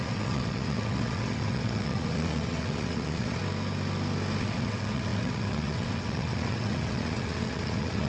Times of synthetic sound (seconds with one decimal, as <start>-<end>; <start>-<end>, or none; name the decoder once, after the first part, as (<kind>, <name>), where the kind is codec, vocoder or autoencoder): 0.0-3.4 (vocoder, WaveNeXt); 4.4-8.1